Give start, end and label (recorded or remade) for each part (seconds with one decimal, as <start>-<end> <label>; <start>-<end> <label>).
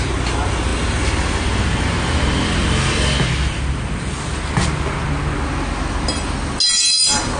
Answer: 0.0-7.4 recorded